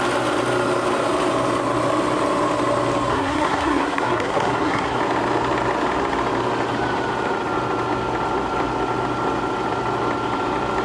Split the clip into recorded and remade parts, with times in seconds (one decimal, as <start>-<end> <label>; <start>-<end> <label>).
0.0-3.1 recorded; 3.1-5.0 remade; 5.0-10.8 recorded

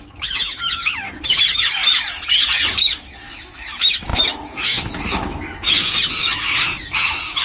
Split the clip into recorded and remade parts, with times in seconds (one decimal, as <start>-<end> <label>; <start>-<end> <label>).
0.0-1.8 remade; 1.8-2.7 recorded; 2.7-7.4 remade